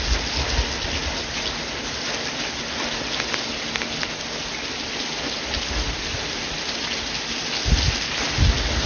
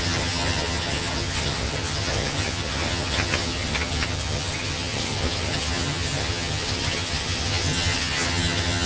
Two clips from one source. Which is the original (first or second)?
first